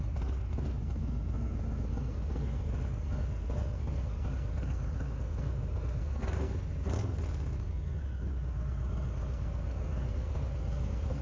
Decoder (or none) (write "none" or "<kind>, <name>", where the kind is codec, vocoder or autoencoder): codec, SNAC